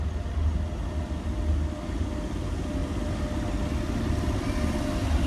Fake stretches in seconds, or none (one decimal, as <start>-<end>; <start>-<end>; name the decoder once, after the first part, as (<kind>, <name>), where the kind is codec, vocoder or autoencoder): none